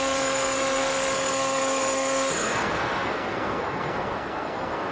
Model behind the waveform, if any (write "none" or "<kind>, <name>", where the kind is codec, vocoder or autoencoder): codec, SNAC